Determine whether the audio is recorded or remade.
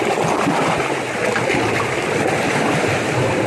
recorded